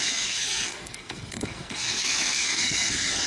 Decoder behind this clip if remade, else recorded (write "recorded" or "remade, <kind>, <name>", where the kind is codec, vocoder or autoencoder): remade, codec, SNAC